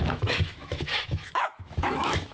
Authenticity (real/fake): fake